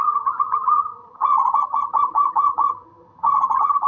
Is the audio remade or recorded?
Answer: remade